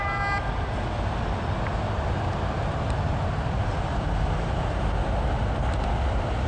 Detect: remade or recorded recorded